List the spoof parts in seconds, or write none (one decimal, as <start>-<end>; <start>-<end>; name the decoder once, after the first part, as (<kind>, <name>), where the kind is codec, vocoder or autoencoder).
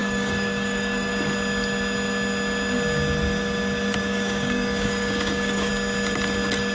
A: 0.0-1.1 (codec, DAC); 4.0-5.7